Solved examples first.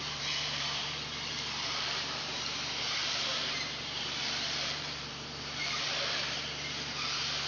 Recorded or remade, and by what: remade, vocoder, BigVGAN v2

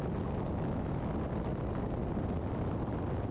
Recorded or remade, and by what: recorded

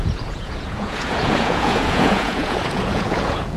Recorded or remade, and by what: remade, vocoder, Vocos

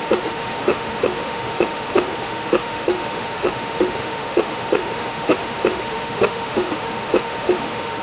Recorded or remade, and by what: remade, autoencoder, DAC-VAE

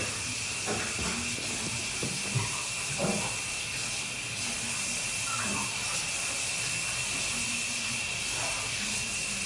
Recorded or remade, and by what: recorded